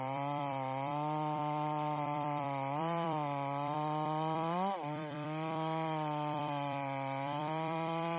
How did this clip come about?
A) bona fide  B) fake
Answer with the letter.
B